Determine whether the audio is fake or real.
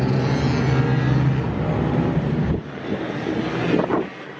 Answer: real